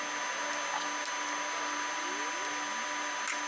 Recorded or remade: recorded